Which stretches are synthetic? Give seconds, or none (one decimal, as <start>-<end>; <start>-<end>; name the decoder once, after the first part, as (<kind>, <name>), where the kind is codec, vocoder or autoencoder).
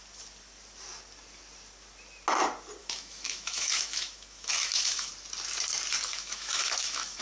2.8-5.1 (autoencoder, DAC-VAE); 6.1-7.2